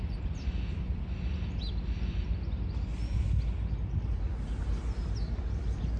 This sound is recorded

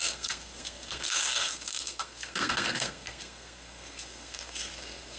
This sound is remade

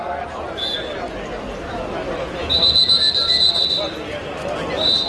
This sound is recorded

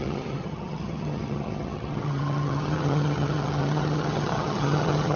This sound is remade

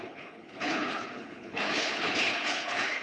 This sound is remade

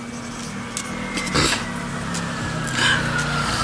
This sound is recorded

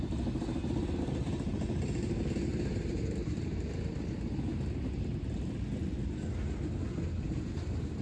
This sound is recorded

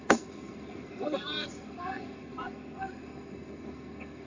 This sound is remade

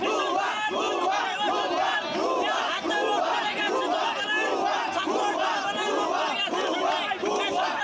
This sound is recorded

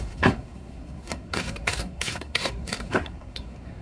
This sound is remade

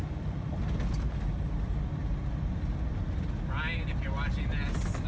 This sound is recorded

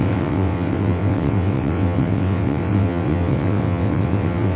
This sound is remade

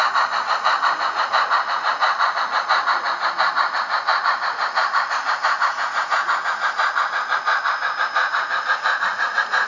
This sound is remade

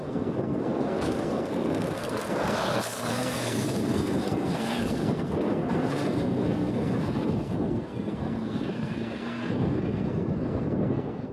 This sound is remade